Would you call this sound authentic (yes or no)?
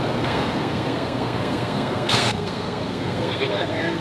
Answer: no